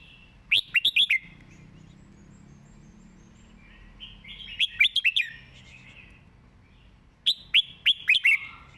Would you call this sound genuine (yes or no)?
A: yes